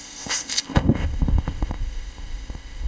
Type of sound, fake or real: fake